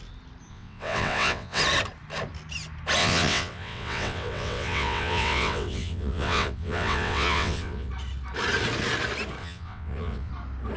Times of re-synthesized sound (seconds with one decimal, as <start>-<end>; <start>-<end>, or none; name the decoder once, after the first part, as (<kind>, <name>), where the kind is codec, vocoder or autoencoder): 0.5-1.6 (vocoder, WaveNeXt); 3.0-7.9; 9.4-10.3